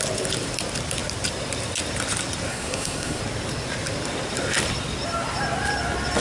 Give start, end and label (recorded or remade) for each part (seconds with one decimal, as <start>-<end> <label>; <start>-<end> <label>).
0.0-2.5 recorded; 2.5-3.2 remade; 3.2-6.2 recorded